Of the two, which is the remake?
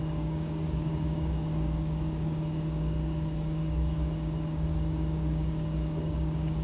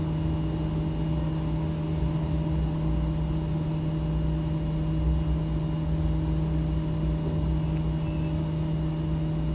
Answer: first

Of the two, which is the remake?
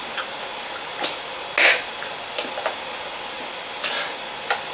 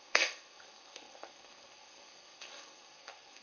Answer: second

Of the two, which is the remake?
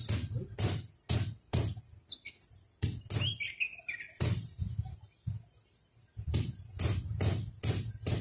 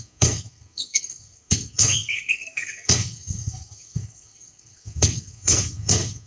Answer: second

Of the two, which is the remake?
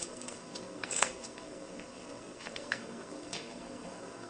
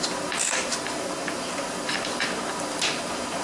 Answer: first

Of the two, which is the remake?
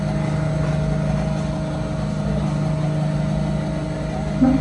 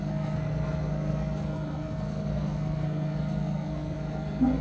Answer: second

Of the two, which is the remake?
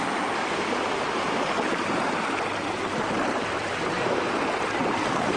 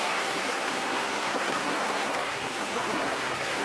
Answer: second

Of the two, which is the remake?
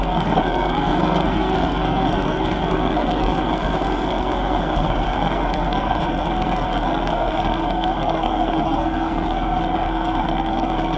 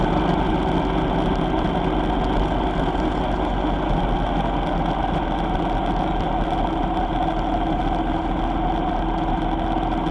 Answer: first